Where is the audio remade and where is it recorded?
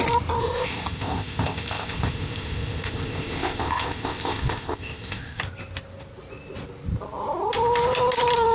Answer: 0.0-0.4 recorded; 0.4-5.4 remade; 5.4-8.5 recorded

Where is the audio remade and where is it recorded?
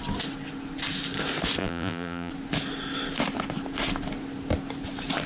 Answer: 0.0-1.6 recorded; 1.6-2.3 remade; 2.3-5.3 recorded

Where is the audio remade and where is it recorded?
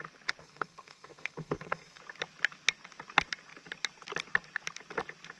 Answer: 0.0-0.4 recorded; 0.4-2.0 remade; 2.0-5.4 recorded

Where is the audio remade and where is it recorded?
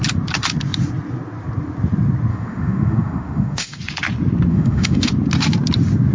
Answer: 0.0-2.3 recorded; 2.3-3.8 remade; 3.8-4.5 recorded; 4.5-5.1 remade; 5.1-6.1 recorded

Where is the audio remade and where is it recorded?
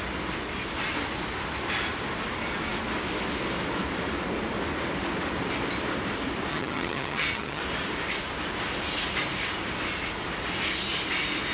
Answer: 0.0-6.5 recorded; 6.5-7.6 remade; 7.6-11.5 recorded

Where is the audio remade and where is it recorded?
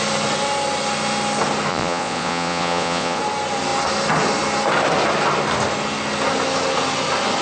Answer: 0.0-1.7 recorded; 1.7-3.2 remade; 3.2-7.4 recorded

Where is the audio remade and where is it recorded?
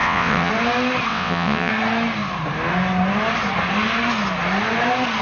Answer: 0.0-0.5 remade; 0.5-1.1 recorded; 1.1-1.7 remade; 1.7-5.2 recorded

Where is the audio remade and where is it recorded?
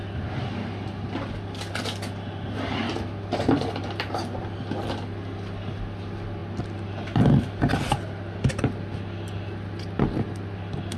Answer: 0.0-11.0 recorded